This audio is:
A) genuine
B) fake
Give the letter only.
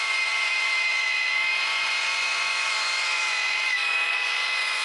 B